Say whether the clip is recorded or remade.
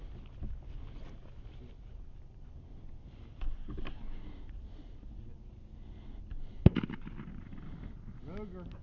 recorded